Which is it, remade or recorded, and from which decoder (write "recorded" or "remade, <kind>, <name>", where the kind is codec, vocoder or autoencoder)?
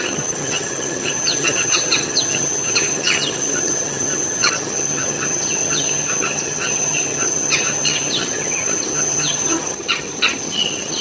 remade, vocoder, HiFi-GAN